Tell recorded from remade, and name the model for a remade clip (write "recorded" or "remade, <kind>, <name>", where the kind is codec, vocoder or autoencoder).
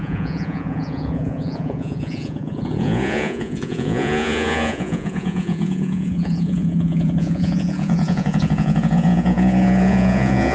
remade, vocoder, Vocos